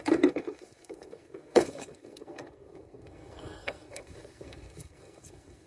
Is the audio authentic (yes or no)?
no